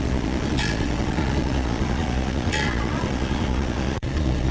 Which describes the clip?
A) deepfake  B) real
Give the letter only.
A